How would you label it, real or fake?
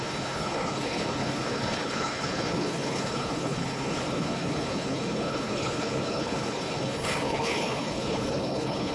fake